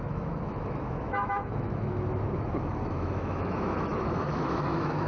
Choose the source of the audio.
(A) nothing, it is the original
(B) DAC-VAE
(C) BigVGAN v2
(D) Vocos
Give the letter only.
B